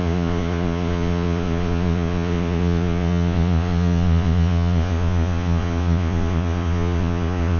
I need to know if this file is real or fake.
fake